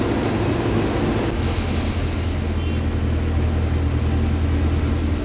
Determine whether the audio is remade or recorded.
recorded